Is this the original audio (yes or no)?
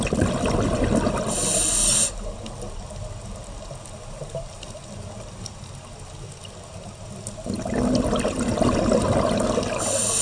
yes